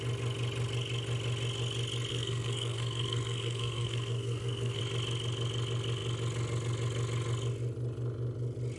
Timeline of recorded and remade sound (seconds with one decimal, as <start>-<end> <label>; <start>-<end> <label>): 0.0-2.1 recorded; 2.1-4.8 remade; 4.8-8.8 recorded